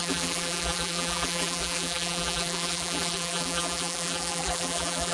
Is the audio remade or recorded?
remade